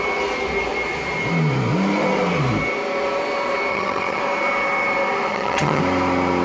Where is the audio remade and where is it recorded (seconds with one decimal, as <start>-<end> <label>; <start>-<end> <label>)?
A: 0.0-3.7 recorded; 3.7-4.2 remade; 4.2-5.3 recorded; 5.3-5.8 remade; 5.8-6.4 recorded